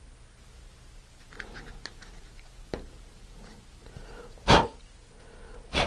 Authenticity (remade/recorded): recorded